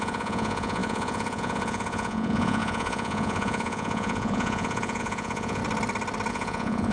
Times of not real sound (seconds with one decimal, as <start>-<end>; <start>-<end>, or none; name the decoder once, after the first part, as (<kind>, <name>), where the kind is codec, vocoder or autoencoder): 0.0-5.6 (vocoder, Vocos); 6.3-6.9